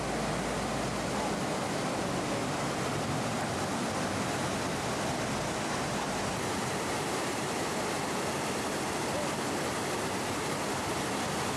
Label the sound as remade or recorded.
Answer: recorded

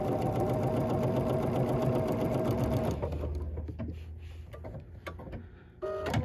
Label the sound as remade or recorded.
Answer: recorded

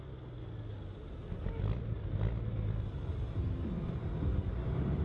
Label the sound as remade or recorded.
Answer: recorded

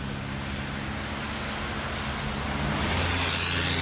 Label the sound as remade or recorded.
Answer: recorded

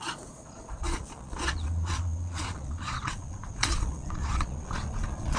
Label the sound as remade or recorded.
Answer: remade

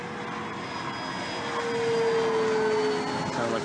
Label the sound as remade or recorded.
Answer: recorded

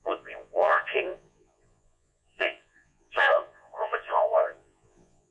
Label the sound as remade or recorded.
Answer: remade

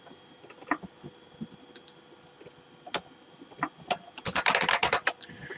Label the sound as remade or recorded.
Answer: recorded